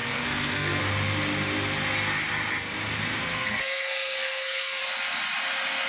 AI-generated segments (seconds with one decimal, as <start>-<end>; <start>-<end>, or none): 0.0-0.8; 3.3-4.8